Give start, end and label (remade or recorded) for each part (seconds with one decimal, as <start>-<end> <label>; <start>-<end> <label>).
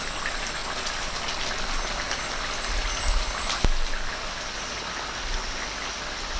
0.0-6.4 recorded